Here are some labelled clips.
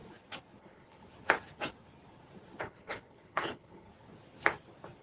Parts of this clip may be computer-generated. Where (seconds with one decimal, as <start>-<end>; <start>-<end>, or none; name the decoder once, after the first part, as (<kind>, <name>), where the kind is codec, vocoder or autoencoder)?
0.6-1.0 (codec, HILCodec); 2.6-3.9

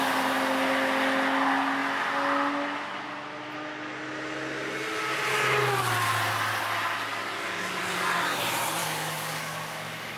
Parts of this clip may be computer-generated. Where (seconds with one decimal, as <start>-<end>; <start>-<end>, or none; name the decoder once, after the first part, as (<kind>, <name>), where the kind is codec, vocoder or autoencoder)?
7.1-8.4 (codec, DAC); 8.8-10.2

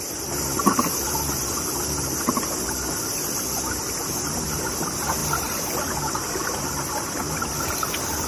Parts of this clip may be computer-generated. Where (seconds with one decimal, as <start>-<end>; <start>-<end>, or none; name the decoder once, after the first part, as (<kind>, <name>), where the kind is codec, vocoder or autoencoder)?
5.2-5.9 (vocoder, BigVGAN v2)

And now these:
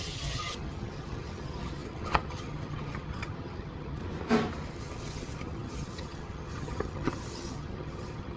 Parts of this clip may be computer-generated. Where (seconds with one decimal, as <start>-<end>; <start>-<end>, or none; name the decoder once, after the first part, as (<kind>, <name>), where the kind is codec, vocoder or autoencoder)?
0.0-4.0 (vocoder, HiFi-GAN); 4.7-8.4

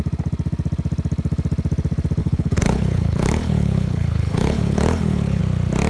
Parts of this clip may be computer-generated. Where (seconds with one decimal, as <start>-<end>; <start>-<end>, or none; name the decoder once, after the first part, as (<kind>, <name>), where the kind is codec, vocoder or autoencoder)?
2.2-5.4 (codec, HILCodec)

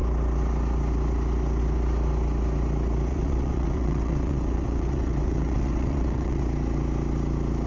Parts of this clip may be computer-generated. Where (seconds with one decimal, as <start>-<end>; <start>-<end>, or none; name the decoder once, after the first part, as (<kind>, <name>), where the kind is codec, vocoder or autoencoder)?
3.1-6.4 (vocoder, WaveNeXt)

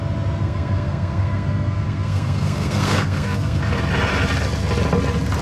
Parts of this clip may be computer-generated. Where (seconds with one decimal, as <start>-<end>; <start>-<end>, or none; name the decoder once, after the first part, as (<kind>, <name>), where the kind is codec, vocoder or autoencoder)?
0.4-3.6 (codec, SNAC)